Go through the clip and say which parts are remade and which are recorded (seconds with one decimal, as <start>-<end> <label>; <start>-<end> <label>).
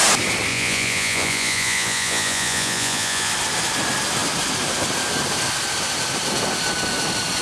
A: 0.0-0.5 recorded; 0.5-3.3 remade; 3.3-7.4 recorded